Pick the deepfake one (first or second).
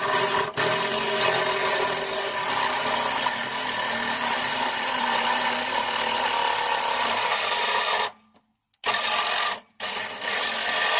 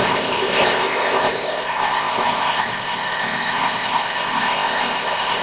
second